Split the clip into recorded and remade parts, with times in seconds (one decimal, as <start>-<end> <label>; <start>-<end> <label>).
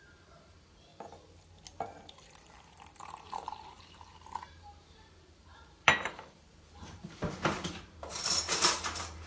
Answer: 0.0-0.9 remade; 0.9-2.5 recorded; 2.5-9.3 remade